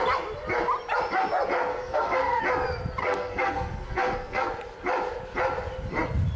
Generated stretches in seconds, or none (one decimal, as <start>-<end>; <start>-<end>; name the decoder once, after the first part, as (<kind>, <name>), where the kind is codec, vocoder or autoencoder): 1.7-2.4 (codec, SNAC); 3.0-4.5